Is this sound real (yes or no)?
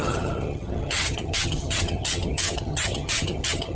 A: no